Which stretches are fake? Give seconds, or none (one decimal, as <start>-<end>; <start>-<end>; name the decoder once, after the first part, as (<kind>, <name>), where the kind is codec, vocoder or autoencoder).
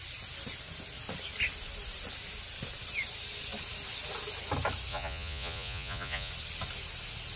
4.9-6.3 (vocoder, Vocos)